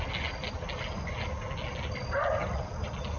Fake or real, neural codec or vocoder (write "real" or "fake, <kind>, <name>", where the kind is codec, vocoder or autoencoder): real